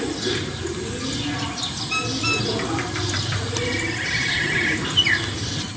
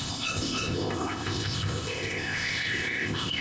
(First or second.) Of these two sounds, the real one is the first